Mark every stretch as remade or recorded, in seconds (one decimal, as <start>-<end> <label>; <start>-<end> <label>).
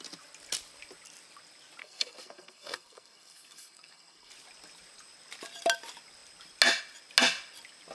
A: 0.0-1.8 recorded; 1.8-4.3 remade; 4.3-7.9 recorded